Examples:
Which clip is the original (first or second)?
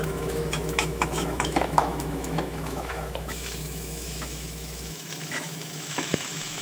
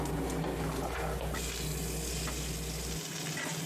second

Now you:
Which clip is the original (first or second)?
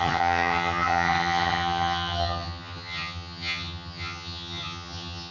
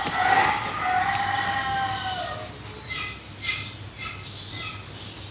second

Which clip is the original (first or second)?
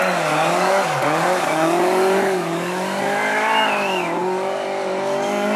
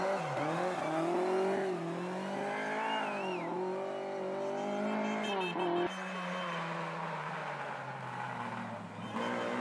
second